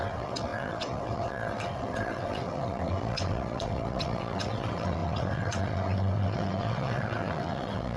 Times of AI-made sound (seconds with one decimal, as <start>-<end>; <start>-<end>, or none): 0.0-8.0